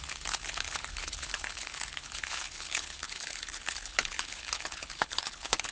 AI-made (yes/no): yes